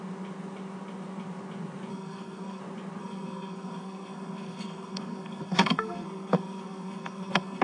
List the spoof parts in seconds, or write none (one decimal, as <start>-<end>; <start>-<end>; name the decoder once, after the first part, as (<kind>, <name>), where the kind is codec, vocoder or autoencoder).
1.9-2.6 (codec, SNAC); 3.0-7.6